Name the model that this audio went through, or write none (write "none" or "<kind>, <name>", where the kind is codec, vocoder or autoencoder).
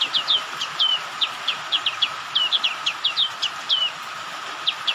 none